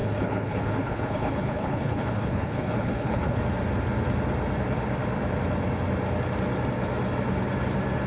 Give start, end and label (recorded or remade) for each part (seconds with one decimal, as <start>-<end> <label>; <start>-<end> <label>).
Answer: 0.0-3.4 remade; 3.4-8.1 recorded

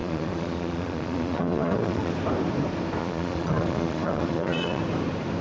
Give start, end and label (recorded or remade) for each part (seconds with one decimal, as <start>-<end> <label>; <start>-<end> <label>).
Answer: 0.0-2.1 remade; 2.1-3.0 recorded; 3.0-4.8 remade; 4.8-5.4 recorded

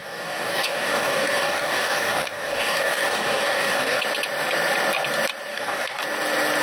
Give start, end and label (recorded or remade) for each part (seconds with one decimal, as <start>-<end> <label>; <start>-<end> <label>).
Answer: 0.0-4.0 remade; 4.0-5.5 recorded; 5.5-6.0 remade; 6.0-6.6 recorded

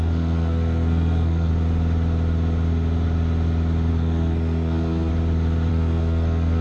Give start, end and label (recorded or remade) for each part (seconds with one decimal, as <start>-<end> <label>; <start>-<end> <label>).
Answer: 0.0-1.5 remade; 1.5-3.9 recorded; 3.9-5.1 remade; 5.1-5.7 recorded; 5.7-6.6 remade

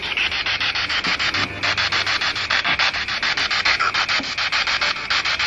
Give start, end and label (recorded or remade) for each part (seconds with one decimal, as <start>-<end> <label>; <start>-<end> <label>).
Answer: 0.0-5.5 recorded

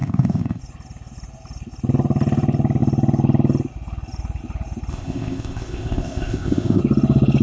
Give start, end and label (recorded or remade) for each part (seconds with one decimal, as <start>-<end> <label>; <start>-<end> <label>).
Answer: 0.0-0.6 remade; 0.6-4.9 recorded; 4.9-6.8 remade; 6.8-7.4 recorded